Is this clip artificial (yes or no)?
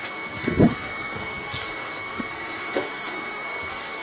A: yes